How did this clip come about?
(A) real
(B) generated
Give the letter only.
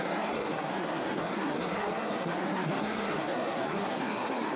B